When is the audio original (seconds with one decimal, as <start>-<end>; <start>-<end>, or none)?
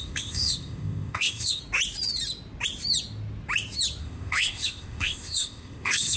1.6-4.0